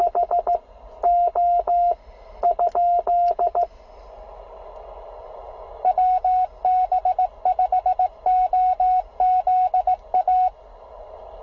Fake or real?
real